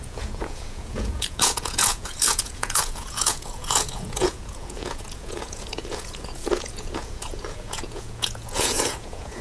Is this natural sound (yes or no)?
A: no